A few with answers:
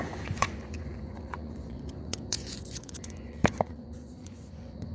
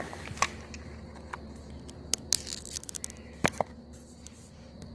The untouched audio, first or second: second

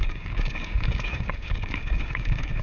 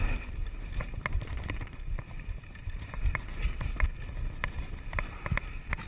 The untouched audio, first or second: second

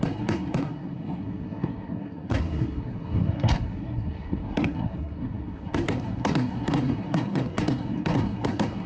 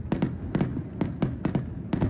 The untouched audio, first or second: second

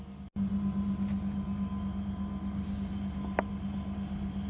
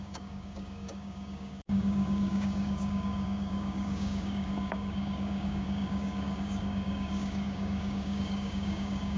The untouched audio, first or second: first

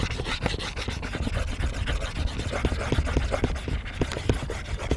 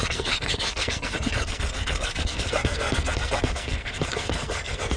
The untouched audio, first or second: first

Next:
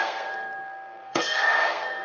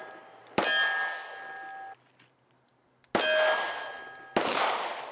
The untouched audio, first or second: second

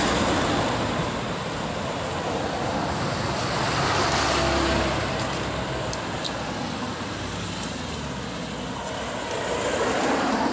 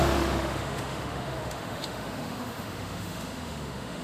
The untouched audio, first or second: first